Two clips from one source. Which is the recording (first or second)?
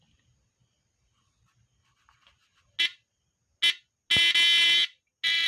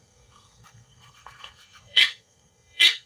first